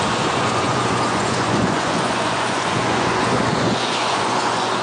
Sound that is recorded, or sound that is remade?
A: remade